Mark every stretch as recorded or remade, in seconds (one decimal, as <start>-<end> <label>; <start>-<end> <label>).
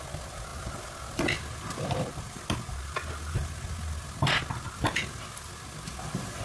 0.0-6.4 recorded